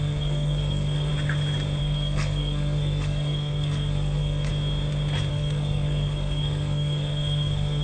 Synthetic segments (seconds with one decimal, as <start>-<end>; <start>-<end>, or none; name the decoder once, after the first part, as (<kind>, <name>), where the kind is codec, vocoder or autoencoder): 0.0-1.1 (codec, SNAC); 1.8-4.5; 5.3-7.8